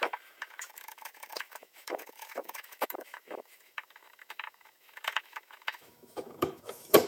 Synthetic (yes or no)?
yes